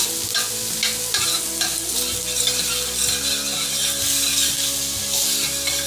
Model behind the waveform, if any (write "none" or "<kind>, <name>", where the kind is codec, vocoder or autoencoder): none